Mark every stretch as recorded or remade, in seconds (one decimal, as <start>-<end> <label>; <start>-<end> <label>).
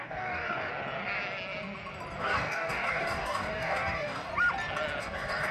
0.0-0.7 remade; 0.7-2.2 recorded; 2.2-4.3 remade; 4.3-5.0 recorded; 5.0-5.5 remade